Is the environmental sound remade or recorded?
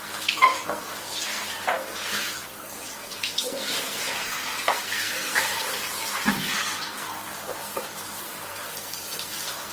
remade